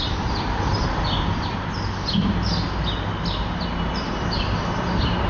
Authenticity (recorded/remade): recorded